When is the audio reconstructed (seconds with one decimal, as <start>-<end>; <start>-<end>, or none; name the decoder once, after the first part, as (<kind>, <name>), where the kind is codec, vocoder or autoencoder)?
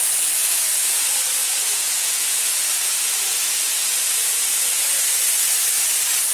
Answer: 0.4-1.0 (vocoder, Vocos); 1.4-4.9